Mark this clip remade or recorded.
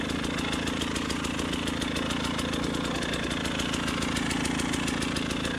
recorded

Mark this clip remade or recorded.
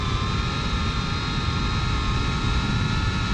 remade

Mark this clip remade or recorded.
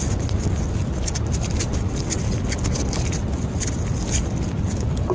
recorded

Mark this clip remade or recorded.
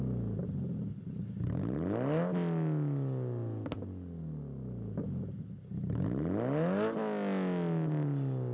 recorded